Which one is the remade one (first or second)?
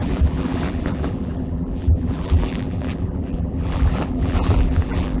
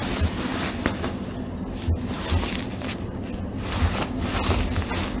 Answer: first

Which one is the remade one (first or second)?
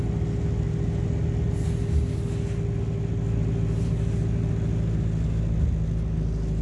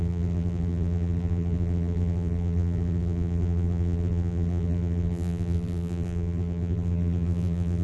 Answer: second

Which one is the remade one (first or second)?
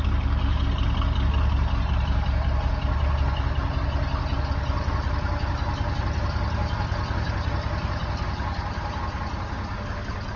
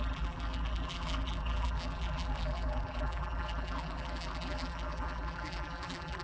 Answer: second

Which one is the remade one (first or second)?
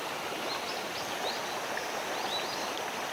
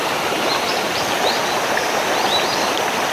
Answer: second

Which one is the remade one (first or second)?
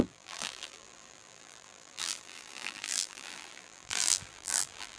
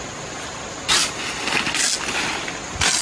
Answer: first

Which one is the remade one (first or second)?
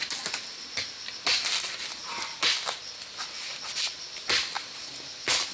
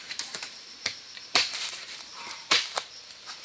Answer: second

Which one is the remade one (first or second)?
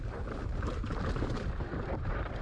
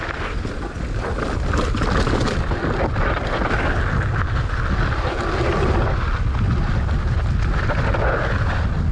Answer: first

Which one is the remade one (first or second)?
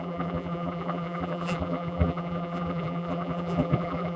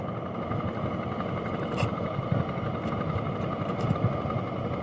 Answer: first